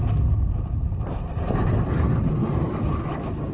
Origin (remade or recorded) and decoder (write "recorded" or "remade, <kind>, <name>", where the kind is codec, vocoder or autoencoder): recorded